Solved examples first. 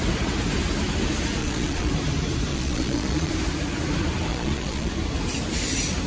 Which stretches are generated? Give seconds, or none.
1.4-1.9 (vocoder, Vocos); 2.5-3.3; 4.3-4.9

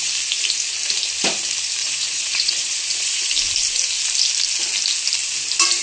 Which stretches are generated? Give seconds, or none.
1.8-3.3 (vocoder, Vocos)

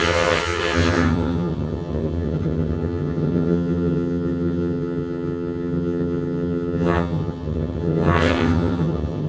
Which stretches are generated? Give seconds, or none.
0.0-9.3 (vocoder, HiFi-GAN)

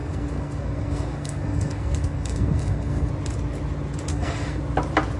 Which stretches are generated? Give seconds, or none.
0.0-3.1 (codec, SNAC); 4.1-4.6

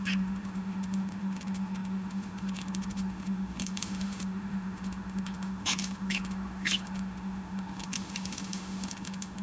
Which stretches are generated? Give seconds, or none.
0.0-9.4 (autoencoder, DAC-VAE)

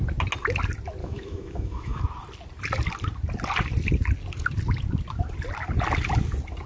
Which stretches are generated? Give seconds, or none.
1.0-2.0 (autoencoder, DAC-VAE)